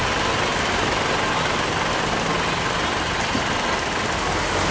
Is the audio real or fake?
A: real